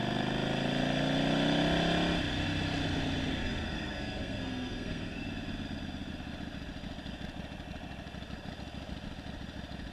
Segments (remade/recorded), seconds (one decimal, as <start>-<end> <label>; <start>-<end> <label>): 0.0-3.3 recorded; 3.3-5.2 remade; 5.2-9.9 recorded

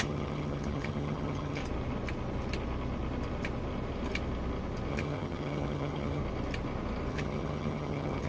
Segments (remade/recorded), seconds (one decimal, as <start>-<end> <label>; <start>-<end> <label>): 0.0-1.6 remade; 1.6-4.9 recorded; 4.9-6.2 remade; 6.2-7.1 recorded; 7.1-8.3 remade

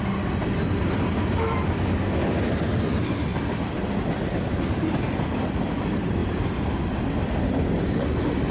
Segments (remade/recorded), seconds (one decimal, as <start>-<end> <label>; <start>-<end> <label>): 0.0-8.5 recorded

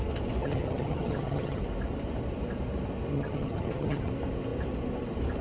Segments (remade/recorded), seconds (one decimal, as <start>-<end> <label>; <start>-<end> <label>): 0.0-0.4 recorded; 0.4-1.6 remade; 1.6-3.1 recorded; 3.1-4.1 remade; 4.1-5.4 recorded

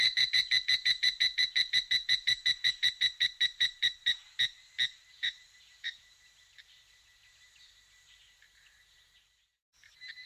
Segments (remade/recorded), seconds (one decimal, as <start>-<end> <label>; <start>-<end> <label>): 0.0-4.2 remade; 4.2-5.1 recorded; 5.1-10.3 remade